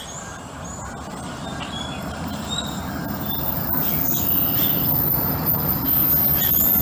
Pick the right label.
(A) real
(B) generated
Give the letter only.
B